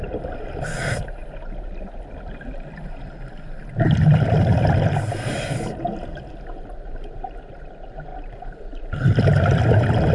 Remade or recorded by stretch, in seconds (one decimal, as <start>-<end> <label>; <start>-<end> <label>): 0.0-10.1 recorded